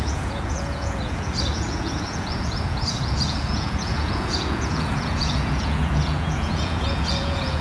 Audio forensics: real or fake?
fake